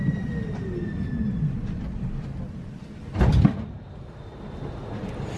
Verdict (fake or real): real